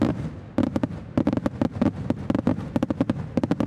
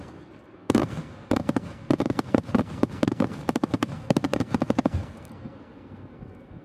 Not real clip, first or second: second